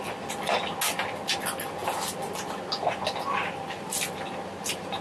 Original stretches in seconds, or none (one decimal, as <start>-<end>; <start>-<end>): 0.0-5.0